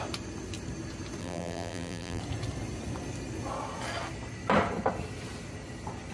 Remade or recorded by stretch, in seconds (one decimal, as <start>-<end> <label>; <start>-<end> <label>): 0.0-1.2 recorded; 1.2-2.2 remade; 2.2-6.1 recorded